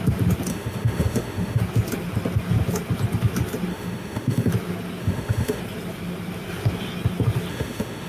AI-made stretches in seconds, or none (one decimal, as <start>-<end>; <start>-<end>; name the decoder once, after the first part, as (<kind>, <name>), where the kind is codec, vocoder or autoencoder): 0.5-1.6 (autoencoder, DAC-VAE); 3.7-4.5; 5.0-5.6; 7.5-8.1